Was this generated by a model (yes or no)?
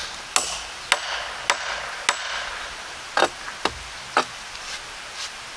no